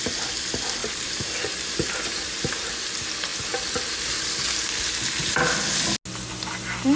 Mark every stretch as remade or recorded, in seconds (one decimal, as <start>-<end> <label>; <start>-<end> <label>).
0.0-0.8 recorded; 0.8-2.7 remade; 2.7-7.0 recorded